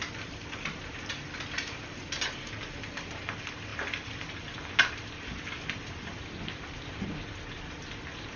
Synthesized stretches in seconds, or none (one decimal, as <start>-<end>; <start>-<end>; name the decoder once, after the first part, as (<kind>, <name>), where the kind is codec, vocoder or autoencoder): none